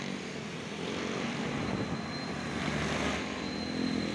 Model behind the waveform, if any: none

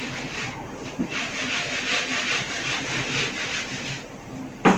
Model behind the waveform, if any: vocoder, BigVGAN v2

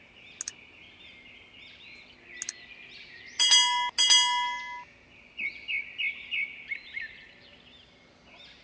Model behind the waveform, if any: none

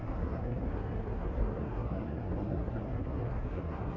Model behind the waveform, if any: codec, SNAC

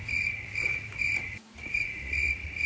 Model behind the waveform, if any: vocoder, Vocos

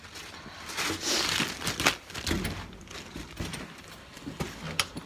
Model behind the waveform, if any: none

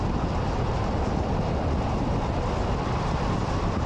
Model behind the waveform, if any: none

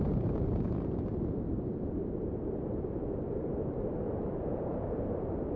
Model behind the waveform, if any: vocoder, BigVGAN v2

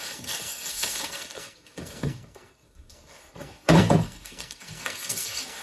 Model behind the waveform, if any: codec, SNAC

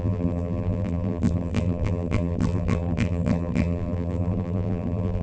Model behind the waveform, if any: vocoder, BigVGAN v2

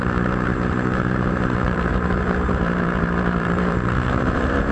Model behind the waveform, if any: vocoder, BigVGAN v2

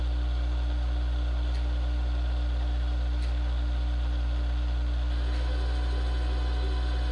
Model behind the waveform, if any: none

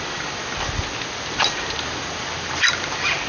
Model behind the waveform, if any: none